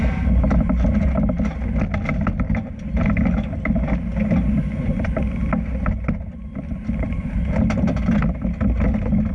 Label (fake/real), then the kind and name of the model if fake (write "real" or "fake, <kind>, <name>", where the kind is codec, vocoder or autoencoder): real